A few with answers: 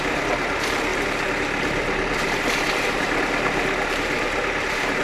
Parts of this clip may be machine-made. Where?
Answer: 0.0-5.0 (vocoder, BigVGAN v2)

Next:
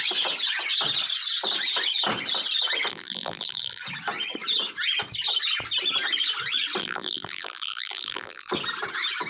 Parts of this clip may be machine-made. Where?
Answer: 2.9-3.8 (vocoder, BigVGAN v2); 6.8-8.5

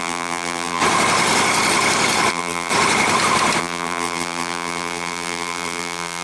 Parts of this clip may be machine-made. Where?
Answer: 0.0-0.8 (vocoder, BigVGAN v2); 2.3-2.7; 3.6-6.2

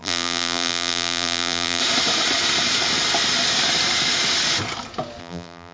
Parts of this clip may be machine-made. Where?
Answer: 0.0-1.8 (vocoder, BigVGAN v2); 5.2-5.7

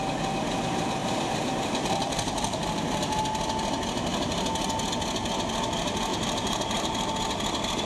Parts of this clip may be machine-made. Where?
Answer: 1.0-3.2 (vocoder, BigVGAN v2); 4.1-4.9; 6.1-7.1

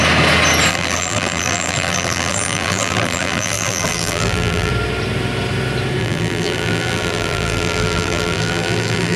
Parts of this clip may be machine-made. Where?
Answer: 0.7-4.7 (vocoder, BigVGAN v2); 6.0-9.2